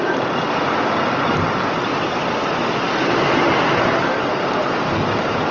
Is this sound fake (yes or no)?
no